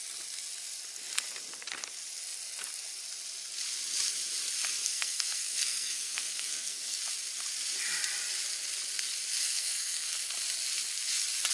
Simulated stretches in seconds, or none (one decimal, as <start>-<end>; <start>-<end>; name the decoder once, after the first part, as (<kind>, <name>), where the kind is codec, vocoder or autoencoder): 4.8-7.0 (codec, SNAC); 9.4-10.3